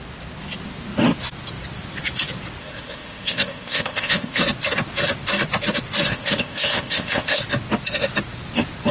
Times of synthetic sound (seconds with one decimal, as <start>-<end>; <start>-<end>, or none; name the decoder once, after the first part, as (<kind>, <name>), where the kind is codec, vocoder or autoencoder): 2.6-4.4 (codec, ZipCodec); 6.1-7.4